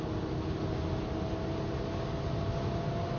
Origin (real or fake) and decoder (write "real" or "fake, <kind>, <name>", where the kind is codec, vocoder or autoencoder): real